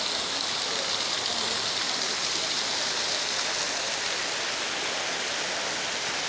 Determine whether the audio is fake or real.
real